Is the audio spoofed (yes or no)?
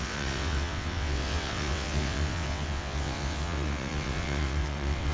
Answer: yes